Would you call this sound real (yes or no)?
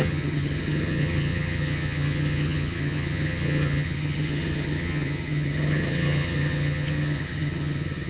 no